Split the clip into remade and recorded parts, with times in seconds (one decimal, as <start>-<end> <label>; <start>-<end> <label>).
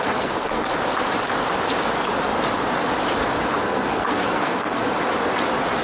0.0-0.7 remade; 0.7-3.6 recorded; 3.6-4.8 remade; 4.8-5.8 recorded